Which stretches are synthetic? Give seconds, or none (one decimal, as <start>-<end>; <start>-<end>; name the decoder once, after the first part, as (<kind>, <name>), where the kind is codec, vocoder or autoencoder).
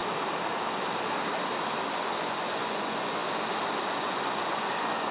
1.9-3.2 (vocoder, Vocos); 3.9-5.1